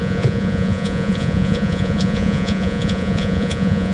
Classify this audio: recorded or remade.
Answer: remade